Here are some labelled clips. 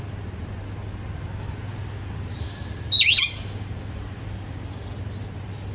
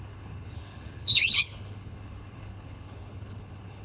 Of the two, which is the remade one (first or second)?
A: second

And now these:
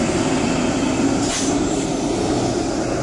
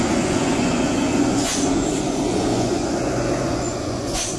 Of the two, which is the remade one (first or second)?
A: second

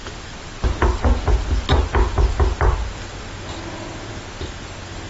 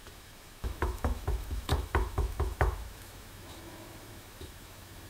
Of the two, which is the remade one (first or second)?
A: second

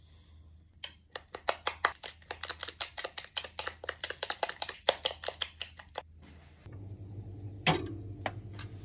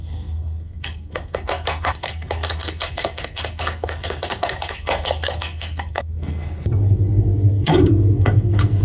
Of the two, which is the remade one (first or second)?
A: second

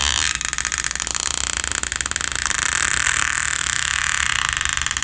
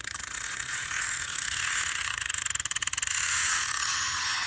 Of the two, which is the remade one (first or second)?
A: second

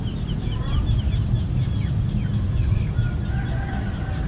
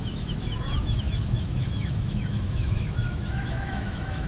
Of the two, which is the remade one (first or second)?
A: second